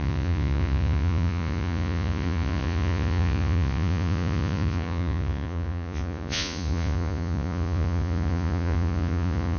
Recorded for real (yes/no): no